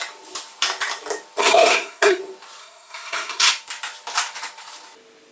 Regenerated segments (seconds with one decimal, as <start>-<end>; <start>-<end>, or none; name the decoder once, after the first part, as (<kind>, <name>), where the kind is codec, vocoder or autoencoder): 1.4-2.2 (codec, SNAC); 2.6-3.5

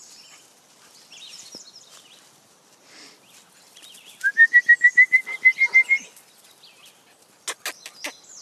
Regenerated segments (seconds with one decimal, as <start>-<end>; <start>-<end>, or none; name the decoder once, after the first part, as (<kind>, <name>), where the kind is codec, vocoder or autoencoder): none

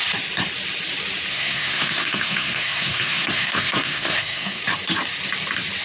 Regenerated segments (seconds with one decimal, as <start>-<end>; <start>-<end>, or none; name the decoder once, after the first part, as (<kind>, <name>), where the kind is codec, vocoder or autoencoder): 1.3-4.6 (codec, SNAC)